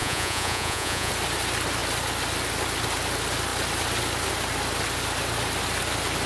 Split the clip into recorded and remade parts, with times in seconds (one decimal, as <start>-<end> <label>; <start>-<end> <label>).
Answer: 0.0-1.1 remade; 1.1-6.3 recorded